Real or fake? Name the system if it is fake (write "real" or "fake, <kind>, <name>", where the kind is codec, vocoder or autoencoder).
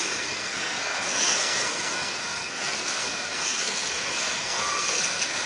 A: fake, codec, SNAC